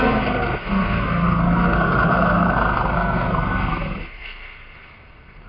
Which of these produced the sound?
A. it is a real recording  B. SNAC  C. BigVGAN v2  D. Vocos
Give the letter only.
B